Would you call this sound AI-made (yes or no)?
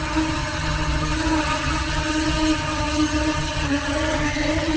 yes